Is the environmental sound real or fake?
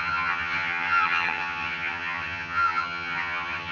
fake